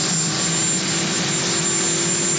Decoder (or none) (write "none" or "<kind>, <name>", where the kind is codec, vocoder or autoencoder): none